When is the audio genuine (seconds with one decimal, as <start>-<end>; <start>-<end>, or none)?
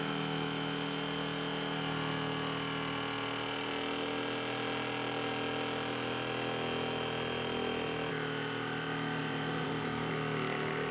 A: 0.0-9.2; 10.1-10.9